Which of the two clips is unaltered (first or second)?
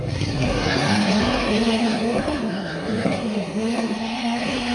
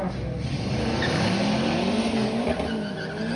second